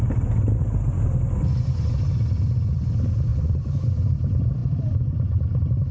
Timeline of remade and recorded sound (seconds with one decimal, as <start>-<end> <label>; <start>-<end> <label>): 0.0-3.3 recorded; 3.3-4.1 remade; 4.1-5.9 recorded